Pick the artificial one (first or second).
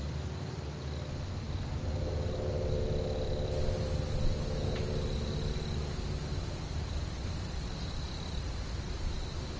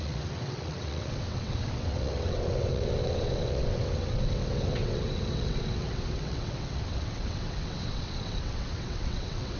second